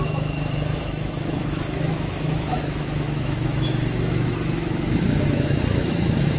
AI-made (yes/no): yes